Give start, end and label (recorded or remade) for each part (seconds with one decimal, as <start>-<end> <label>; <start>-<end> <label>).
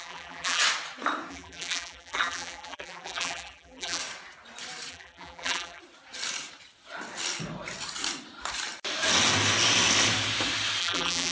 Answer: 0.0-0.6 remade; 0.6-1.3 recorded; 1.3-4.0 remade; 4.0-4.9 recorded; 4.9-5.8 remade; 5.8-10.8 recorded; 10.8-11.3 remade